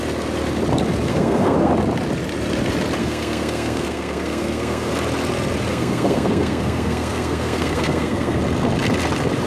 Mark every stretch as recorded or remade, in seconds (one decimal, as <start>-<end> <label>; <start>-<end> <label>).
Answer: 0.0-1.1 recorded; 1.1-1.7 remade; 1.7-3.0 recorded; 3.0-4.9 remade; 4.9-5.7 recorded; 5.7-8.4 remade; 8.4-9.5 recorded